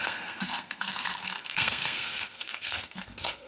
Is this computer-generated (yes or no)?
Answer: yes